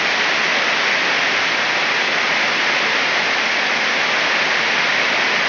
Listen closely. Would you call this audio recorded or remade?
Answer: recorded